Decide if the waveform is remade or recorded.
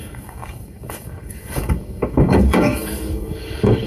remade